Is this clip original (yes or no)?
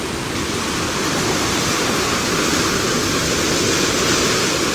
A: yes